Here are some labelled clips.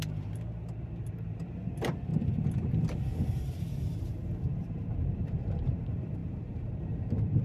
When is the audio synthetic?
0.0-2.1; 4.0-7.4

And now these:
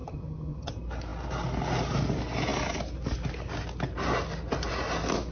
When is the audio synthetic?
0.0-0.7